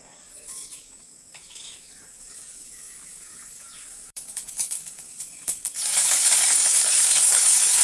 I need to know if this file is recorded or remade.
remade